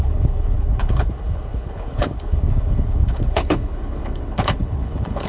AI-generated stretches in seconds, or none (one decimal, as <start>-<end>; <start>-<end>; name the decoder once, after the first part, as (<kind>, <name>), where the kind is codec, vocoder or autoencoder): 0.0-5.3 (codec, HILCodec)